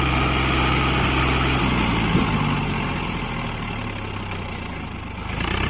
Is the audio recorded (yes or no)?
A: yes